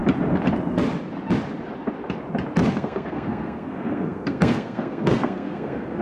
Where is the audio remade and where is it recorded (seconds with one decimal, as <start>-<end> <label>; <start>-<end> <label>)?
0.0-2.7 recorded; 2.7-6.0 remade